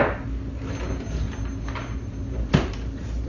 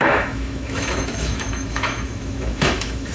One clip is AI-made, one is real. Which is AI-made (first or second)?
second